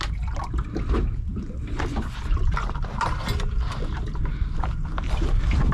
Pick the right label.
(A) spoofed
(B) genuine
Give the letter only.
B